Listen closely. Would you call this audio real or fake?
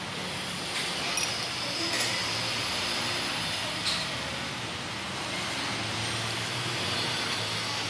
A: real